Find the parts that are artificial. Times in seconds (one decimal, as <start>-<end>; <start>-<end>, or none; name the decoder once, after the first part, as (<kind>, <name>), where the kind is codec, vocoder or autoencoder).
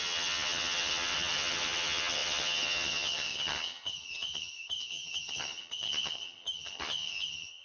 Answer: 0.0-7.6 (vocoder, HiFi-GAN)